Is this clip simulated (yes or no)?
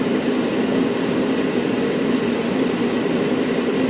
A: no